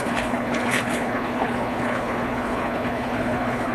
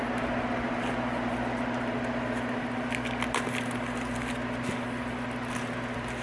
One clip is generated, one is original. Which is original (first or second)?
second